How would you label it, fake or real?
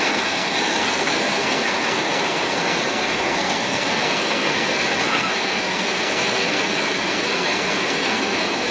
fake